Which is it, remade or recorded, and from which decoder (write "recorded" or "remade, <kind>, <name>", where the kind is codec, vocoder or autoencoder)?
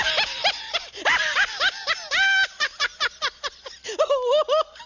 recorded